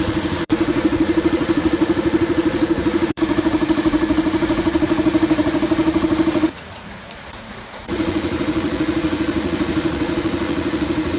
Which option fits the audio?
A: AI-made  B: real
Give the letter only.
A